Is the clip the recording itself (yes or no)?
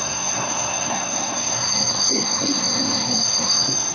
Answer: no